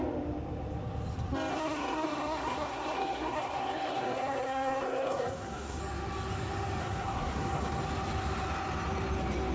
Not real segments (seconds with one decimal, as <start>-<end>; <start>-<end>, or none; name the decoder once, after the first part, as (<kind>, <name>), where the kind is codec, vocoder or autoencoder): 1.5-5.8 (codec, SNAC); 6.8-7.8